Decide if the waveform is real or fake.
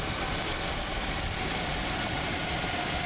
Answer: real